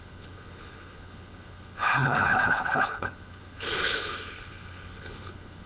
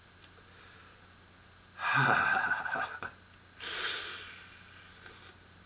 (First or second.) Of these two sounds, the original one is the second